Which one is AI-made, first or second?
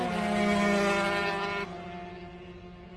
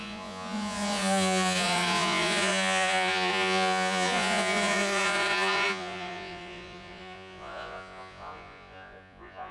second